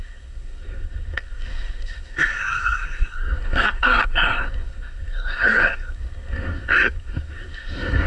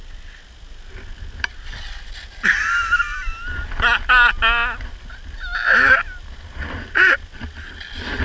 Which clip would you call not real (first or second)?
first